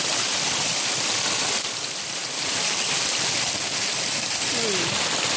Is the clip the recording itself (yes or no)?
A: yes